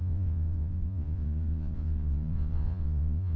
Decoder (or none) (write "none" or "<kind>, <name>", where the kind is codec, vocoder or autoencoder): vocoder, Vocos